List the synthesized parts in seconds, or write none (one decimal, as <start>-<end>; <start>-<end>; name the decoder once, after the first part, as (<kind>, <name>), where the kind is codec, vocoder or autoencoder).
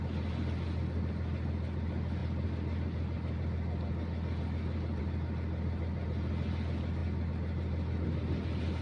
none